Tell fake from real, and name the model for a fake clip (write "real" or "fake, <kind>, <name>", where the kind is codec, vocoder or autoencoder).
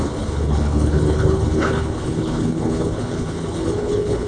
fake, codec, HILCodec